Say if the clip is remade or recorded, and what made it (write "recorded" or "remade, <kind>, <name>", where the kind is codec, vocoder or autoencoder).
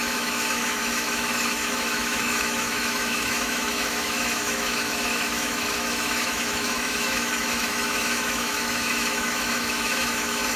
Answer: remade, autoencoder, DAC-VAE